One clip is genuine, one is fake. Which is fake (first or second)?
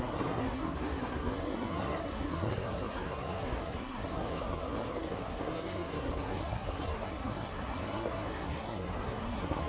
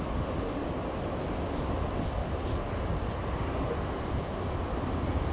first